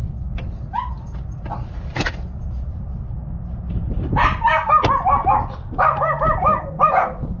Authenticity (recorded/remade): recorded